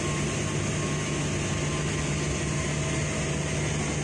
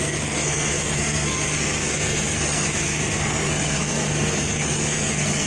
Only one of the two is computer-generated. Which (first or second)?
second